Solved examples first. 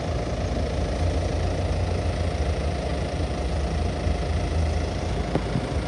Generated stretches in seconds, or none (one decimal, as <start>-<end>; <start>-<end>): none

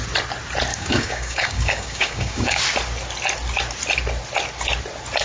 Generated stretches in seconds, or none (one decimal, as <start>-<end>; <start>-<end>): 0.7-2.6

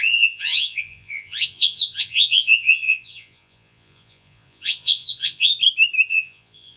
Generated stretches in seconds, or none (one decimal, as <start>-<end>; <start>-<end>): 0.0-5.5; 6.1-6.8

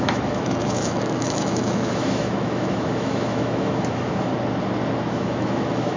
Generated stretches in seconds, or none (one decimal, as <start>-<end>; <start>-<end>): 0.0-4.3; 5.1-6.0